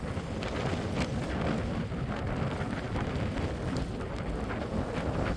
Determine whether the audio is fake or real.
real